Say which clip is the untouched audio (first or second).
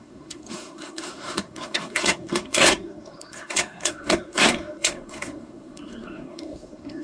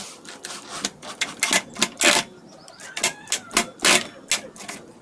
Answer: second